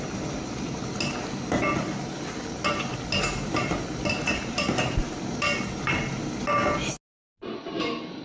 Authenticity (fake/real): real